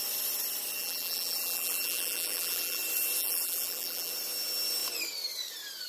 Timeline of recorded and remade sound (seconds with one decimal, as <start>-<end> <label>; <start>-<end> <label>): 0.0-0.8 recorded; 0.8-2.8 remade; 2.8-3.2 recorded; 3.2-4.1 remade; 4.1-5.9 recorded